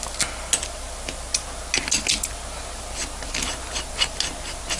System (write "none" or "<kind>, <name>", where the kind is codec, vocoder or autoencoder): none